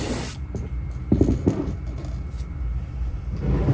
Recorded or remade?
remade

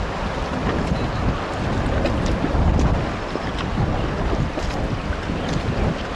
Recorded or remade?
recorded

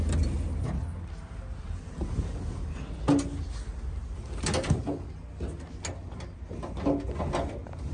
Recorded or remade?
recorded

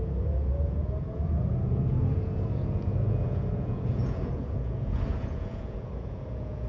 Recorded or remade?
remade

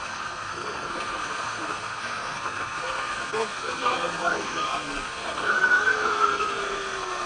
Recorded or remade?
remade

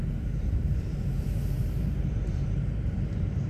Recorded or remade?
remade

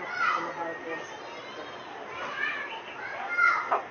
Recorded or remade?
recorded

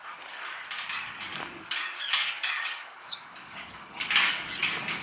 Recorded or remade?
remade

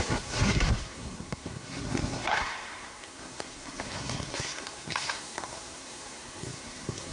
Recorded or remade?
remade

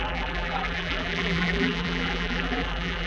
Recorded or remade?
remade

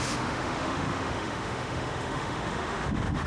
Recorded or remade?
remade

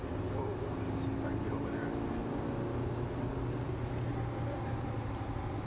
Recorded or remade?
recorded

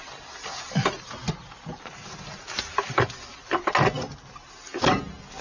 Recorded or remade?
recorded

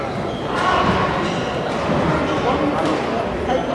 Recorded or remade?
recorded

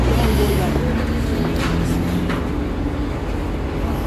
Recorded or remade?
recorded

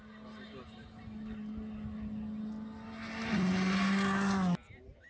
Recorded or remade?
recorded